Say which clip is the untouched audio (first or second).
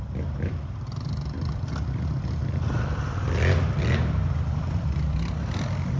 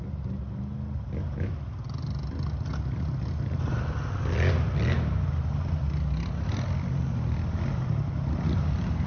second